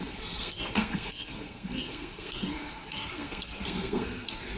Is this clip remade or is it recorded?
remade